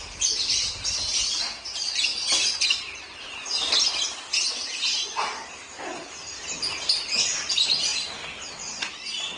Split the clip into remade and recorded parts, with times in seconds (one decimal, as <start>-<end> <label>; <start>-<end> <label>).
0.0-9.4 recorded